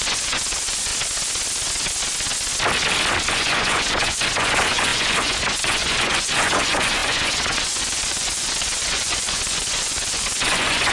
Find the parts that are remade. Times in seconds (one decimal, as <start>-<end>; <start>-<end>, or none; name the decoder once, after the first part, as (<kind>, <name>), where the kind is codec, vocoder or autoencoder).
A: 0.0-0.9 (vocoder, Vocos); 3.3-10.9